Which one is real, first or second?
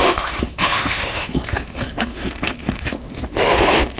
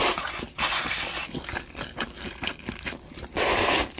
second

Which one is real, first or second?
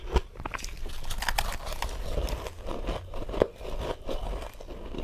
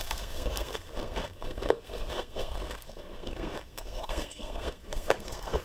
first